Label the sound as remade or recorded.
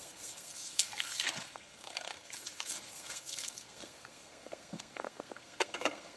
remade